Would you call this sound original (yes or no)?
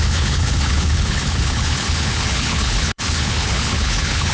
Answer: no